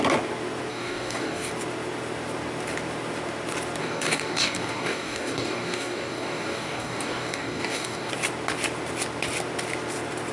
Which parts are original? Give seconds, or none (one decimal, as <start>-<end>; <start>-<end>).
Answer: 0.0-0.7; 1.5-3.8; 8.1-10.3